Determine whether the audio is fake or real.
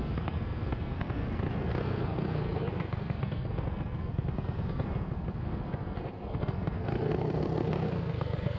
fake